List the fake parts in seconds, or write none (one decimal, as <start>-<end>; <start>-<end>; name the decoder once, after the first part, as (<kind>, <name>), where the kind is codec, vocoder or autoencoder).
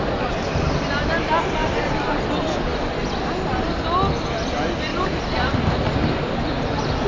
1.6-2.3 (vocoder, BigVGAN v2); 4.9-5.9